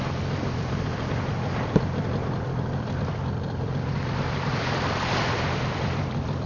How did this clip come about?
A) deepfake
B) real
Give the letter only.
B